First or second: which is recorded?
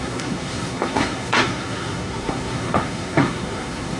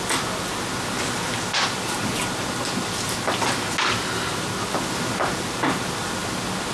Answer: second